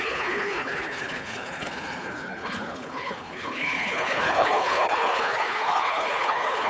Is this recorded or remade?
remade